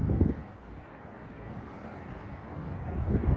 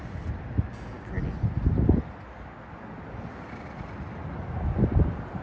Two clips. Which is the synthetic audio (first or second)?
first